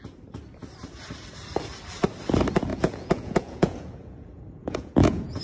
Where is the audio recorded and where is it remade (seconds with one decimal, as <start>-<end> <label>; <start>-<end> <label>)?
0.0-2.7 recorded; 2.7-5.4 remade